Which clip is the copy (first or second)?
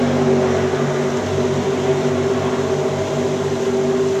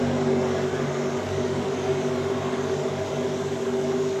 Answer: second